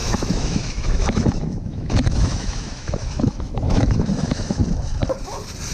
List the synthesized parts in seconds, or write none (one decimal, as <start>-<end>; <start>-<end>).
0.0-4.6